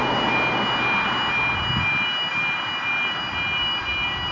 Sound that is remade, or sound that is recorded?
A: recorded